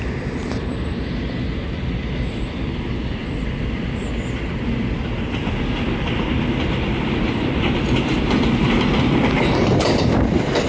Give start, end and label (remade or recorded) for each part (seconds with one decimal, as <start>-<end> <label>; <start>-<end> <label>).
0.0-10.7 recorded